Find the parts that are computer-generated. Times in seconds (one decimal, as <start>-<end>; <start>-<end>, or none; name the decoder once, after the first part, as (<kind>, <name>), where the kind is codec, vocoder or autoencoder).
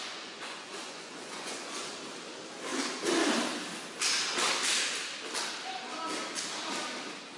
0.0-1.9 (vocoder, Vocos)